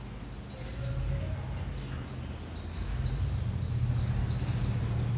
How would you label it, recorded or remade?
recorded